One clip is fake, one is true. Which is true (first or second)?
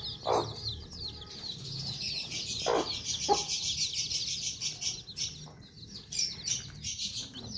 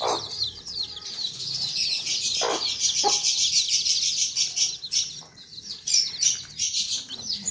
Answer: first